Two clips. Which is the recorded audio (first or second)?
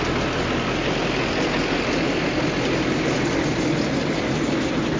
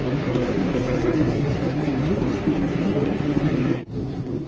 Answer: first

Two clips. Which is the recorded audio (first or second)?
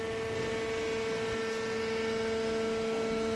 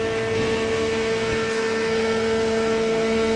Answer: first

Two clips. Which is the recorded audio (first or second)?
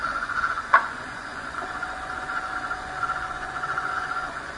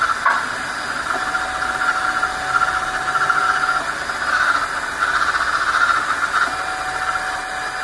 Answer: second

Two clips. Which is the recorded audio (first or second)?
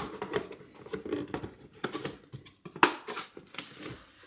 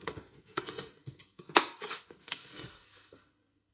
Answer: first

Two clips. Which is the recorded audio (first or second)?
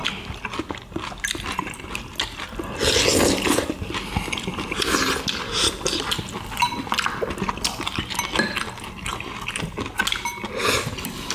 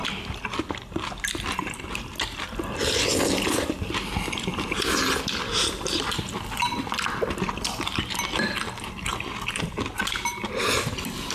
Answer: first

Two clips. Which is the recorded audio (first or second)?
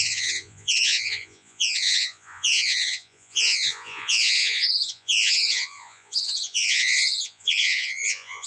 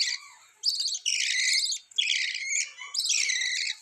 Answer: second